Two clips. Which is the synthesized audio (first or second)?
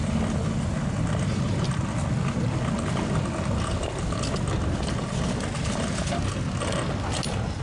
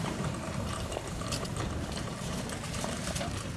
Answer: second